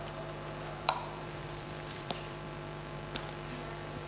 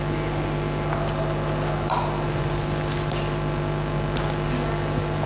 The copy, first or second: first